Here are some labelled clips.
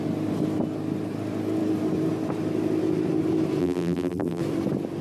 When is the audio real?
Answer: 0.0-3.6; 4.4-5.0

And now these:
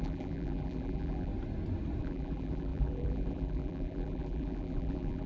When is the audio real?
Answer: 1.3-2.0

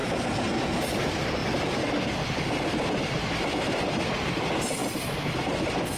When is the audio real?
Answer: 1.4-3.0

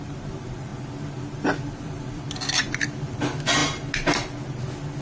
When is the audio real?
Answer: 0.7-1.7; 3.6-5.0

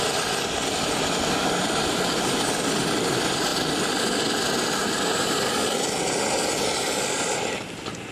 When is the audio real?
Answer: 0.0-4.8; 5.6-8.1

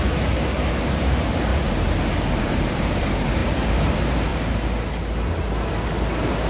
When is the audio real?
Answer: 1.5-2.4; 4.3-6.5